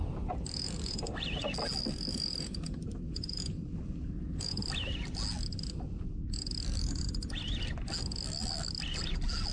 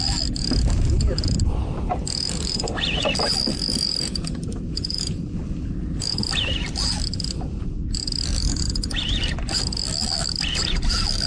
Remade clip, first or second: second